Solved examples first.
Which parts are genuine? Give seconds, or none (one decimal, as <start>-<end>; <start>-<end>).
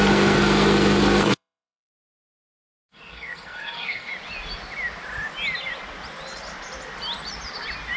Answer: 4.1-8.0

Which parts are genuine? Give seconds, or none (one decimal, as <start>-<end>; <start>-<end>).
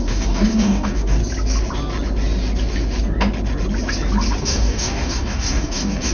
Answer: 1.2-4.4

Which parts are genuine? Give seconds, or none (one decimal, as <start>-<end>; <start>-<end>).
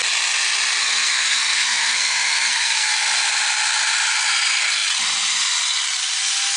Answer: 0.0-0.8; 2.9-6.6